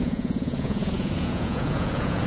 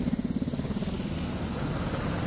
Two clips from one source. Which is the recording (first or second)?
second